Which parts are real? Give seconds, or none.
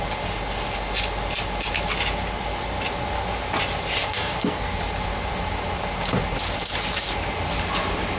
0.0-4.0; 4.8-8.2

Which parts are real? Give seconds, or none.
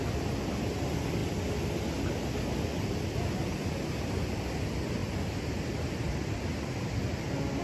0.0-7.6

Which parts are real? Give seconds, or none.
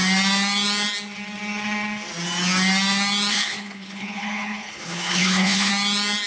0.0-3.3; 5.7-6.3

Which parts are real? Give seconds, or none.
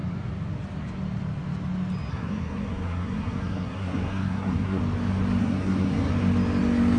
0.0-2.1; 4.8-5.4; 6.1-7.0